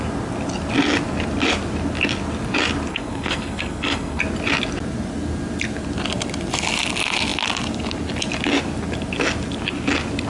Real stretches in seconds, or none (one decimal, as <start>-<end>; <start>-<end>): 0.0-2.9; 4.2-10.3